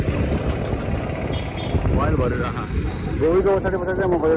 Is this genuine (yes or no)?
yes